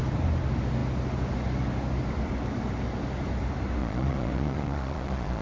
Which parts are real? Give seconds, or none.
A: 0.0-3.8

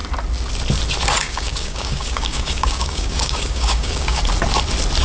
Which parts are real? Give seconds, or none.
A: 0.0-1.2; 4.2-5.0

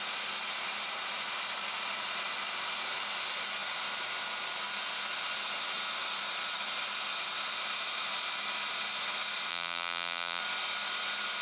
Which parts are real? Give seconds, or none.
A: 0.0-9.5; 10.4-11.4